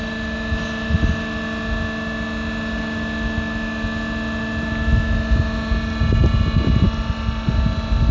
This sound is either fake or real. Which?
real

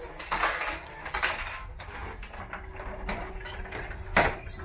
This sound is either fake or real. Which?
real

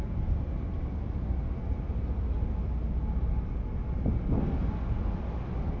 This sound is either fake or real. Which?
real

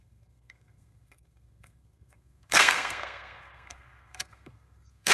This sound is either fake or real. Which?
fake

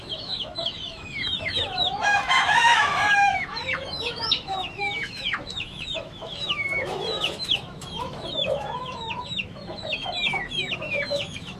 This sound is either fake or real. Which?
fake